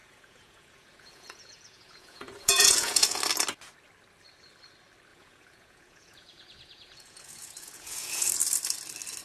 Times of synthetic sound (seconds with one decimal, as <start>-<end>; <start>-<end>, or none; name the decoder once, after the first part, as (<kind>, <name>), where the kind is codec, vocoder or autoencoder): 0.0-3.2 (vocoder, Vocos); 5.1-8.3